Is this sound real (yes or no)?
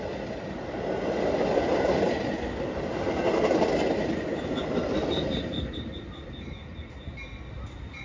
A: yes